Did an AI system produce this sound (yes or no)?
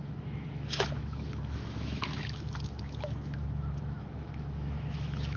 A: yes